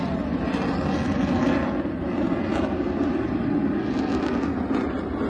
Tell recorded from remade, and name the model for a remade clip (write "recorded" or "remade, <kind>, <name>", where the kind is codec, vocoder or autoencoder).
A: recorded